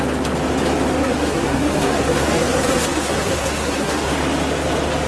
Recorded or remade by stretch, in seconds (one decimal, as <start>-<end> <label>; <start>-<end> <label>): 0.0-1.0 recorded; 1.0-4.1 remade; 4.1-5.1 recorded